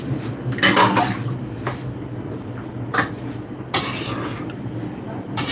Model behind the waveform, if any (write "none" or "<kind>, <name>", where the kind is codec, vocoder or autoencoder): none